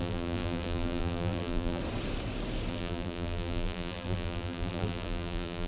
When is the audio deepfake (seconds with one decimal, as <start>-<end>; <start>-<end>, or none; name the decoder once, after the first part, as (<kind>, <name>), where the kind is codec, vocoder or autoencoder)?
0.0-1.8 (vocoder, BigVGAN v2); 2.7-5.7